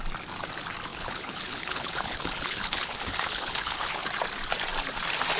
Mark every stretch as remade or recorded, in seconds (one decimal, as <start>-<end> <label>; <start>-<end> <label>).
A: 0.0-0.9 recorded; 0.9-4.1 remade; 4.1-5.4 recorded